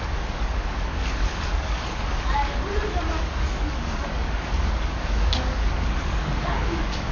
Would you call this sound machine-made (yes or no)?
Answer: yes